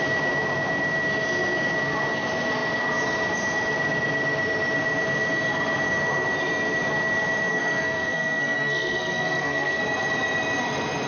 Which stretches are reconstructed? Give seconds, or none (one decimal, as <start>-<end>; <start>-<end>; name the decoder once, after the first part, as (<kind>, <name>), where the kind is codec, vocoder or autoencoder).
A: 7.5-9.8 (codec, SNAC)